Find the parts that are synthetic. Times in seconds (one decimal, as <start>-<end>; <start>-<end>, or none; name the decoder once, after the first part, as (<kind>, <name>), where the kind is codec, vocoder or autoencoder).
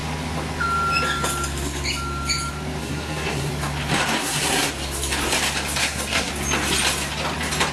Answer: 2.8-3.5 (codec, SNAC); 4.2-4.7; 5.8-6.3